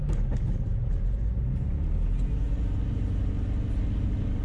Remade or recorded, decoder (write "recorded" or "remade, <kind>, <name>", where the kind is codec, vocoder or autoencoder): recorded